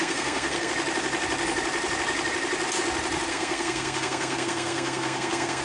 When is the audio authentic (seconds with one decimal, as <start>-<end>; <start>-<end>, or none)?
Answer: 0.7-3.3